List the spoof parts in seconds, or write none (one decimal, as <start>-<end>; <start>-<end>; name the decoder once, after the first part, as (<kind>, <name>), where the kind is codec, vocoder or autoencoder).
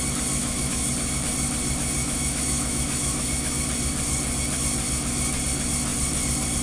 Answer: 0.4-0.9 (autoencoder, DAC-VAE); 2.0-3.6